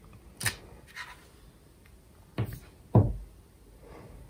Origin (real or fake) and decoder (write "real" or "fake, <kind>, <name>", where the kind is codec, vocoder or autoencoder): real